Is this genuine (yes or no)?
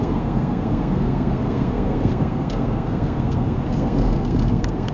no